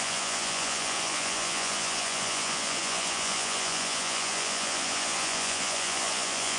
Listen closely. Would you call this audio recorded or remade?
remade